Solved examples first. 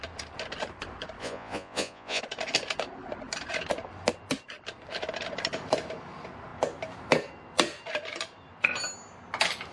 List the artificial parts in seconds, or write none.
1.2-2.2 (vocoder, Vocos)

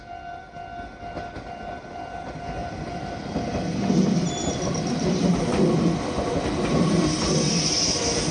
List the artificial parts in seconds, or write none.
2.6-6.3 (vocoder, BigVGAN v2)

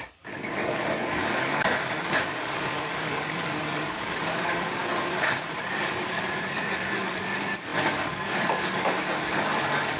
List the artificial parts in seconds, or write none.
0.0-4.8 (codec, DAC); 5.6-10.0